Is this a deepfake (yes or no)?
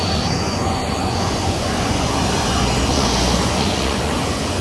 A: yes